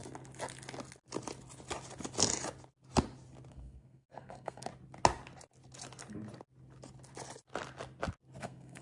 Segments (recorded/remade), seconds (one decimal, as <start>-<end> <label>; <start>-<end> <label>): 0.0-3.5 recorded; 3.5-4.7 remade; 4.7-8.4 recorded; 8.4-8.8 remade

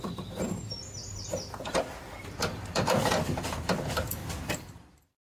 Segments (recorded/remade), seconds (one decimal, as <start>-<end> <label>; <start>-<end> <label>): 0.0-5.4 remade

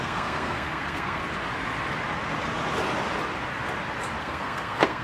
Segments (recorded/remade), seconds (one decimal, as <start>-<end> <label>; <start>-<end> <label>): 0.0-1.2 remade; 1.2-4.2 recorded; 4.2-5.0 remade

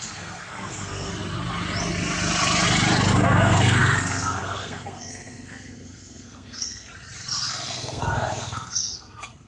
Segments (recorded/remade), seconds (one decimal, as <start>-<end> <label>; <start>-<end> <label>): 0.0-1.1 remade; 1.1-3.1 recorded; 3.1-6.9 remade; 6.9-7.5 recorded; 7.5-9.5 remade

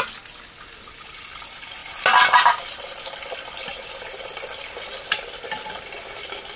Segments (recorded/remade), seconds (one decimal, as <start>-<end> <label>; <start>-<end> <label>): 0.0-6.6 recorded

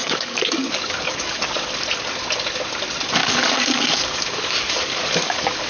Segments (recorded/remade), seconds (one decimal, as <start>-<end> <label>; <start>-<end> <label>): 0.0-1.7 remade; 1.7-3.2 recorded; 3.2-5.7 remade

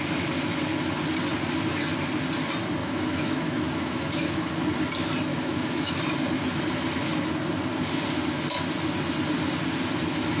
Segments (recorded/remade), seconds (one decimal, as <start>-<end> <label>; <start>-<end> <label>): 0.0-2.8 recorded; 2.8-4.5 remade; 4.5-5.3 recorded; 5.3-6.0 remade; 6.0-10.4 recorded

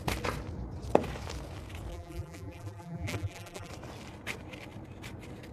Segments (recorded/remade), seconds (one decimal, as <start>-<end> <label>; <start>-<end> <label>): 0.0-1.9 recorded; 1.9-3.7 remade; 3.7-5.5 recorded